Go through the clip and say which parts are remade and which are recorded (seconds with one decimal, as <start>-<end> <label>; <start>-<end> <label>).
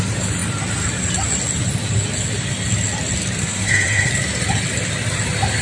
0.0-3.4 recorded; 3.4-4.1 remade; 4.1-5.6 recorded